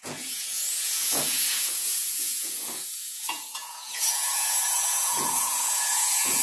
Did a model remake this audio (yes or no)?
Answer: yes